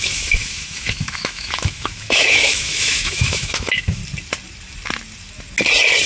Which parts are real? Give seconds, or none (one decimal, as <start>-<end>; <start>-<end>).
4.0-6.1